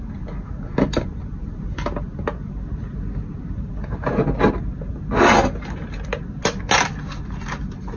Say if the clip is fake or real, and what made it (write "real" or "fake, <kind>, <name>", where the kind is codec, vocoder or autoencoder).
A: real